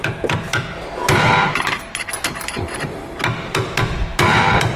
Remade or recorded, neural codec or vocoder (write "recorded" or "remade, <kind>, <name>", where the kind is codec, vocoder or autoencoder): recorded